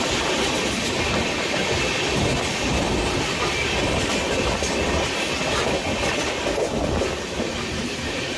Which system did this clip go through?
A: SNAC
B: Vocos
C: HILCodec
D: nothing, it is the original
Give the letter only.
D